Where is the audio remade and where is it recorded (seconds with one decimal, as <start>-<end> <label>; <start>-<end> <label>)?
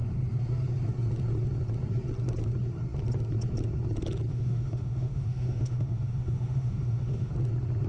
0.0-4.3 recorded; 4.3-7.3 remade; 7.3-7.9 recorded